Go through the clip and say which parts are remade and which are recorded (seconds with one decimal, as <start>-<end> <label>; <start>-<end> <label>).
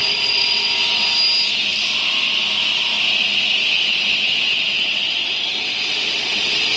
0.0-1.1 remade; 1.1-3.6 recorded; 3.6-6.8 remade